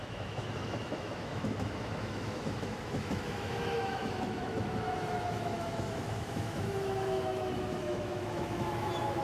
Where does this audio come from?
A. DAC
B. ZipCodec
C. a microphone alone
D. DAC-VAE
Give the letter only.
D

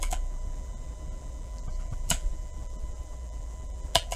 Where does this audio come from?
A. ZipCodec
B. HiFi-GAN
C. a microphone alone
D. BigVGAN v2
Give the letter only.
D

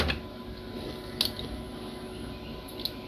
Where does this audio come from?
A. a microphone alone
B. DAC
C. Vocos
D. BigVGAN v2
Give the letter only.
A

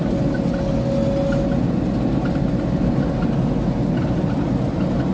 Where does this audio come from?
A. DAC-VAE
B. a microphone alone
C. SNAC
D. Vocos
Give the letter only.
B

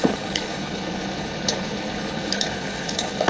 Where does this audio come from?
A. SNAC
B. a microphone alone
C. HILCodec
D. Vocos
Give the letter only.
C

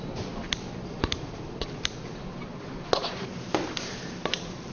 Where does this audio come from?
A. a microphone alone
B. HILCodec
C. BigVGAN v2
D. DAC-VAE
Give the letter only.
C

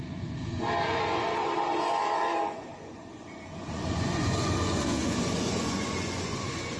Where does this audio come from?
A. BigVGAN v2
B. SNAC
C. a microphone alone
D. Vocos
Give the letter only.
D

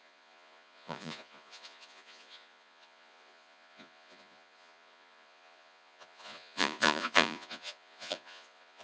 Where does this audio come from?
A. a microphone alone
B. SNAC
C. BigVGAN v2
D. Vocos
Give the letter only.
D